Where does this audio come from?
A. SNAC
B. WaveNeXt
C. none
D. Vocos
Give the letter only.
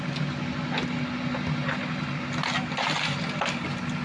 C